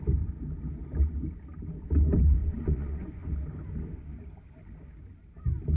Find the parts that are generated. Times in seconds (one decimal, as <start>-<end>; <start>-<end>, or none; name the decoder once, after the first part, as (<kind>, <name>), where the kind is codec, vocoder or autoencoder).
2.4-3.2 (vocoder, Vocos)